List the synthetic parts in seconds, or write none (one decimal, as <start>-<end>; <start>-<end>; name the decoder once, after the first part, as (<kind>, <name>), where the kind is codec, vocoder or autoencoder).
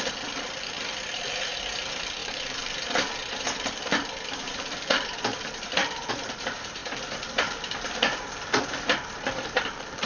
0.0-10.1 (vocoder, BigVGAN v2)